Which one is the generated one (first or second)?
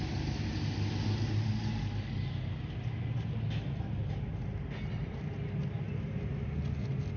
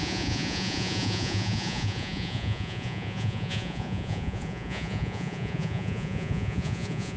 second